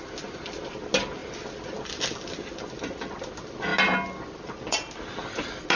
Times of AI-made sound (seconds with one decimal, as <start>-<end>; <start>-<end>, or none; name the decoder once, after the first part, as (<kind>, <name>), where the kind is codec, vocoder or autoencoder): none